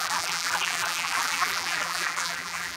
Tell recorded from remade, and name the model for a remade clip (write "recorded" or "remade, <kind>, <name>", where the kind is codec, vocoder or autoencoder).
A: remade, vocoder, BigVGAN v2